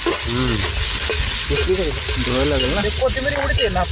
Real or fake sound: real